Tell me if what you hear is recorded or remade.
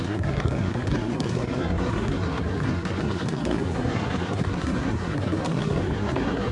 remade